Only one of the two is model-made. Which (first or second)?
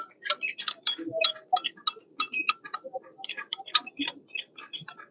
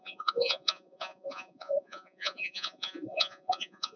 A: second